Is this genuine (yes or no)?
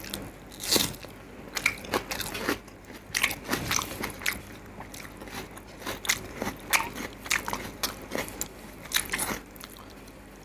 yes